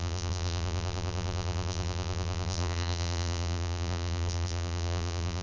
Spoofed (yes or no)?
yes